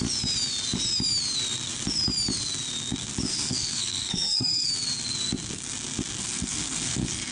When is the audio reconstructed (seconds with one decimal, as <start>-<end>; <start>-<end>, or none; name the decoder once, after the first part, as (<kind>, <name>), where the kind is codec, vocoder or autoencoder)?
3.3-4.7 (codec, SNAC); 6.2-7.3